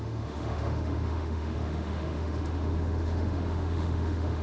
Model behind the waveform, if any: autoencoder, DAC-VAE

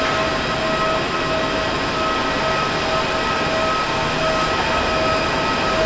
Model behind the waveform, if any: none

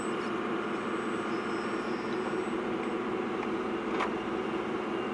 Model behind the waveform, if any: none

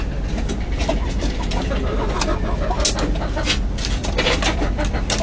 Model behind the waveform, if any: none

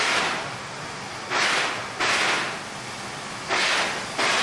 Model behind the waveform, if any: none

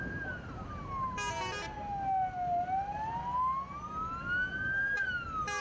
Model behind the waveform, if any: none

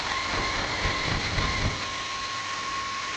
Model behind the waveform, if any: none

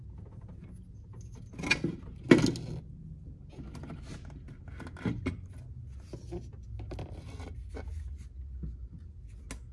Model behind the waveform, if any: none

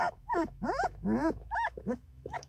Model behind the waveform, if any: autoencoder, DAC-VAE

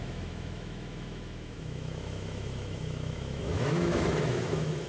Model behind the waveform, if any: autoencoder, DAC-VAE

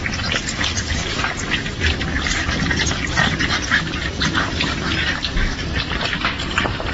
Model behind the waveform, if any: none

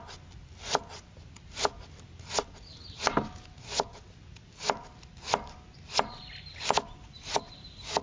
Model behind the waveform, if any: none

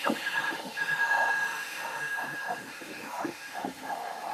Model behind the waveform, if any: autoencoder, DAC-VAE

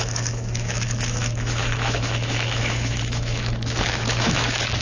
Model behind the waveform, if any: autoencoder, DAC-VAE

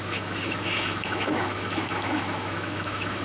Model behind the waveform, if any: autoencoder, DAC-VAE